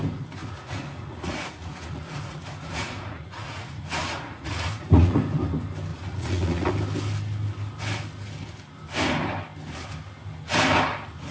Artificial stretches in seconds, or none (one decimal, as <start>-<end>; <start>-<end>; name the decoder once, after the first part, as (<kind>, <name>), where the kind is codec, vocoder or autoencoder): 0.4-5.2 (vocoder, Vocos); 5.9-6.7